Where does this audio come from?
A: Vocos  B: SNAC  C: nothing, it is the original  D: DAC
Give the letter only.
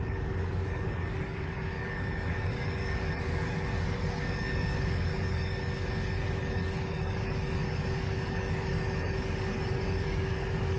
D